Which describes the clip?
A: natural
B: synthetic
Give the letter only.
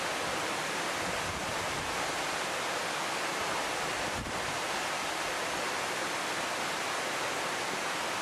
A